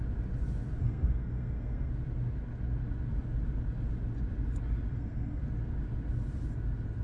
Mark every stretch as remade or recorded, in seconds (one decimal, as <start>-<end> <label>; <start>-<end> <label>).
0.0-0.8 recorded; 0.8-1.9 remade; 1.9-4.9 recorded; 4.9-5.4 remade; 5.4-7.0 recorded